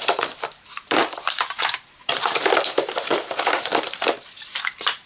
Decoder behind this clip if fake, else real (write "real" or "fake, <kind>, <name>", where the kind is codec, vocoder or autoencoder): fake, vocoder, BigVGAN v2